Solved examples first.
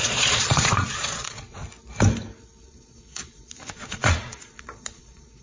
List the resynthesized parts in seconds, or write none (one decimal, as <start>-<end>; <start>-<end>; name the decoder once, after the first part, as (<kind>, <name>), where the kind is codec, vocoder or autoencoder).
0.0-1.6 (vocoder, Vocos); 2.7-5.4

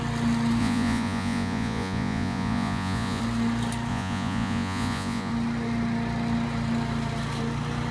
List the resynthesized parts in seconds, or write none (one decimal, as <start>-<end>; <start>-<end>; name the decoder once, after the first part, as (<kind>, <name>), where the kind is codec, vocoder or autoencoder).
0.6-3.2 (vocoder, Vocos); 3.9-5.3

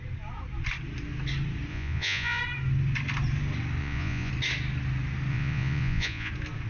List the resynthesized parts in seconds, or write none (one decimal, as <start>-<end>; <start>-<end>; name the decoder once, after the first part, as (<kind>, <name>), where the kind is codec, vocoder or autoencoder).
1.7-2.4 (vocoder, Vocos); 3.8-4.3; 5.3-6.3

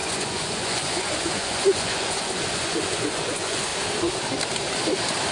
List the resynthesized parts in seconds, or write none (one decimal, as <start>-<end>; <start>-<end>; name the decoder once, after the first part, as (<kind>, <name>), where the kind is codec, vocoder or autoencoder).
0.0-3.7 (vocoder, Vocos)

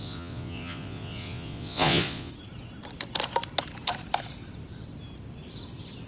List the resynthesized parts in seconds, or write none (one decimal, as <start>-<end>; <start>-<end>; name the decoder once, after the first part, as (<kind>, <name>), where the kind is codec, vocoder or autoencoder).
0.0-2.3 (vocoder, Vocos)